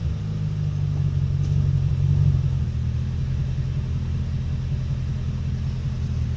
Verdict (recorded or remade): recorded